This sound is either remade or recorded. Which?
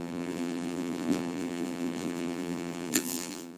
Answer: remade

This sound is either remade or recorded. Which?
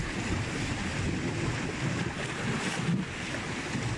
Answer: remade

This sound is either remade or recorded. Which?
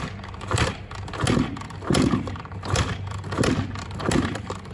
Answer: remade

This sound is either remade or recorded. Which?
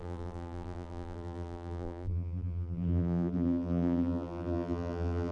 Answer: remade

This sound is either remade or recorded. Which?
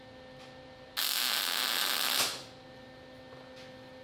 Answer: recorded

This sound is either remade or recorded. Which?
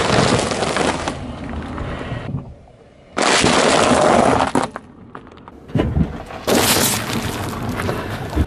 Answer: recorded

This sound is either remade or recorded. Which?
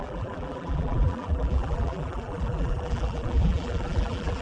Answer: remade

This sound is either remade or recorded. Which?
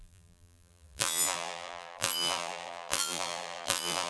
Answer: remade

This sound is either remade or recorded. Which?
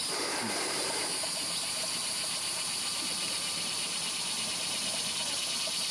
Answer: remade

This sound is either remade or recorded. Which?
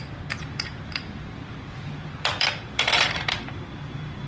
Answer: remade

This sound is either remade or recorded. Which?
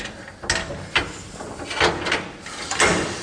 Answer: recorded